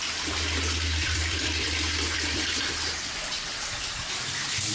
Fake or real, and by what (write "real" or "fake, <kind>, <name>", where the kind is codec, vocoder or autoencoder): fake, vocoder, BigVGAN v2